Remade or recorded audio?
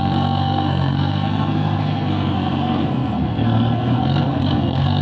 remade